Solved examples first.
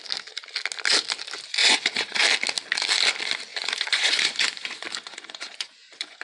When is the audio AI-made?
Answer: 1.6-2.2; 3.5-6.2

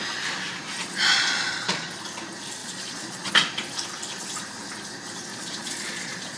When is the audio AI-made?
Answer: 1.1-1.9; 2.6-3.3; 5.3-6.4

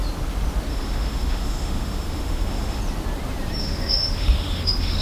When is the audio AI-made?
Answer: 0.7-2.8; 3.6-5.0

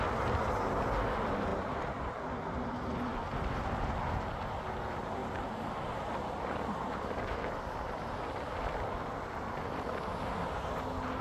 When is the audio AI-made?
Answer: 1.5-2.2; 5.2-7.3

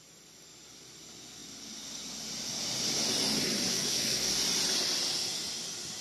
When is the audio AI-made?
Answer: 3.7-4.3